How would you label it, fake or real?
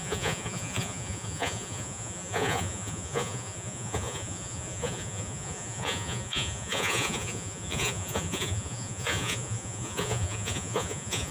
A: fake